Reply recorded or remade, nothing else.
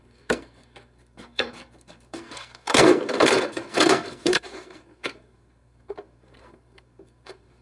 remade